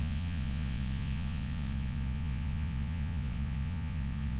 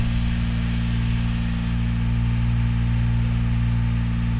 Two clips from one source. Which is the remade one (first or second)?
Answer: first